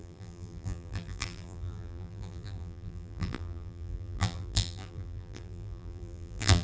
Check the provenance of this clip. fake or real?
fake